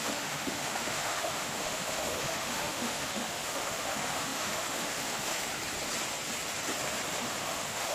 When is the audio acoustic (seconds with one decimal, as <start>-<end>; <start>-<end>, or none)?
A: 5.5-7.4